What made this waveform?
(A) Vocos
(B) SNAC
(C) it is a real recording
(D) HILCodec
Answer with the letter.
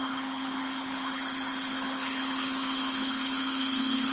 D